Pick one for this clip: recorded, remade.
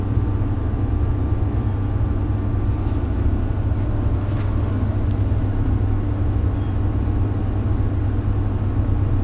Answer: recorded